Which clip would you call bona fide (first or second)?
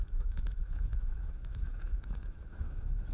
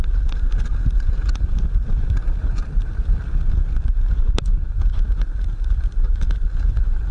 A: second